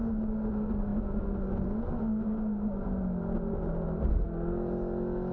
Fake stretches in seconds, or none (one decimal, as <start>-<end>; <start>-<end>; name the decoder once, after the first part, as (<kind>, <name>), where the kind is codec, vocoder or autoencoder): none